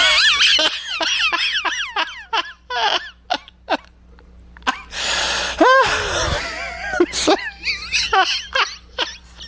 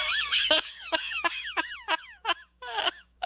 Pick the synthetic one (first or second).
second